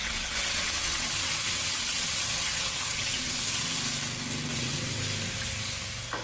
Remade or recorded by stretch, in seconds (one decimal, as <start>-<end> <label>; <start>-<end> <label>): 0.0-3.7 remade; 3.7-4.5 recorded; 4.5-5.0 remade; 5.0-6.2 recorded